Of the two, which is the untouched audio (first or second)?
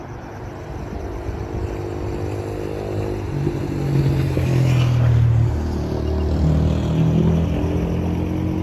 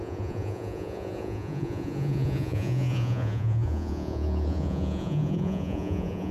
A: first